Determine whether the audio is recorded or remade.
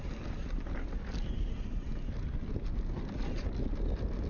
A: recorded